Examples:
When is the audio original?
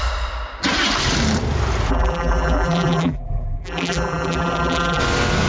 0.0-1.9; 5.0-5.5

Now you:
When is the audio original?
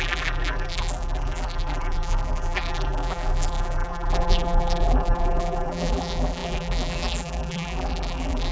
none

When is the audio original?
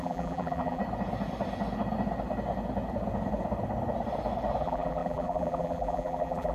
0.8-4.6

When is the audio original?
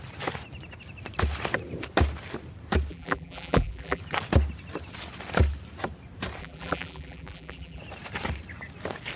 0.0-2.9; 4.0-6.4; 7.8-9.2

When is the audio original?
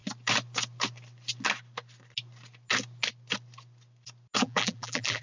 0.0-4.4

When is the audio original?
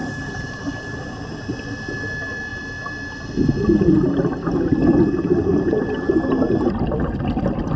1.5-7.8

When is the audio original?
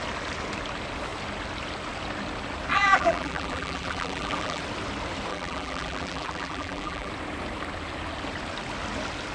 0.0-2.7; 4.6-5.3; 7.1-9.3